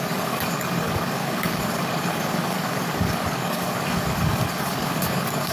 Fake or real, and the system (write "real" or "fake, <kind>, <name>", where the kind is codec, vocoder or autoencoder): fake, codec, DAC